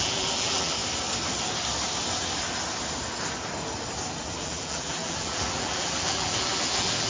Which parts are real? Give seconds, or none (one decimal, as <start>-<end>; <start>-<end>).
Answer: 0.8-4.2